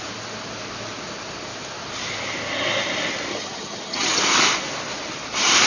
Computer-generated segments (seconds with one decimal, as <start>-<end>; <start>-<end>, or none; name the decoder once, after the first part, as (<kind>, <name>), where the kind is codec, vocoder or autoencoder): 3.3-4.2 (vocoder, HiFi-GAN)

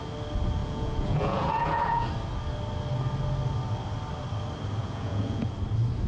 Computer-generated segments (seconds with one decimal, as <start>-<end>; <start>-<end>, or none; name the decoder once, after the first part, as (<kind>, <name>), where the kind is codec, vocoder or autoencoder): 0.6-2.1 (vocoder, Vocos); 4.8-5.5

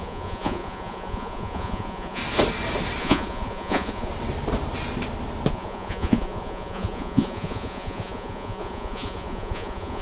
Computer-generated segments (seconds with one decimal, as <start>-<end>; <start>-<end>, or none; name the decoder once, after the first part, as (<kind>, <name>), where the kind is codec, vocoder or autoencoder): 0.0-2.2 (vocoder, Vocos); 3.0-4.1; 5.5-10.0